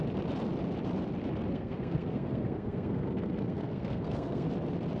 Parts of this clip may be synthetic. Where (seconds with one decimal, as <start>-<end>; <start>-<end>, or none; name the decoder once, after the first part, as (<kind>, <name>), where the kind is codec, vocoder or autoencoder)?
1.5-4.5 (codec, SNAC)